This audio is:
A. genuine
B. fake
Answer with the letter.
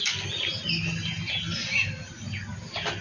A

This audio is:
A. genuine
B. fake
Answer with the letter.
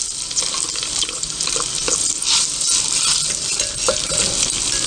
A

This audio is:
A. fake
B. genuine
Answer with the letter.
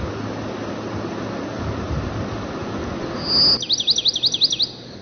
B